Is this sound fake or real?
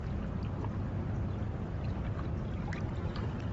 real